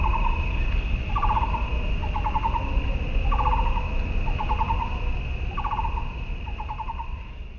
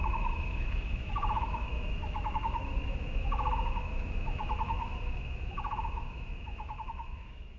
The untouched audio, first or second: first